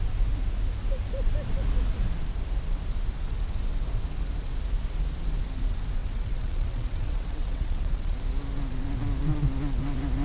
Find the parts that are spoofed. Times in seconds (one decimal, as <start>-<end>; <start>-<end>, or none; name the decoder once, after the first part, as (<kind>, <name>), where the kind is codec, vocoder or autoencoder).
6.0-8.2 (vocoder, WaveNeXt)